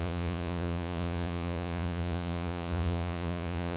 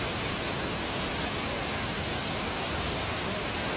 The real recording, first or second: second